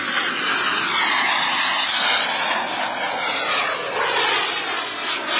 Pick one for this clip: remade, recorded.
recorded